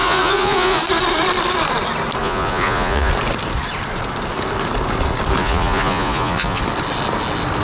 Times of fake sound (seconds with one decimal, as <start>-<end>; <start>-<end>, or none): 0.0-0.8; 2.2-3.1; 5.4-6.6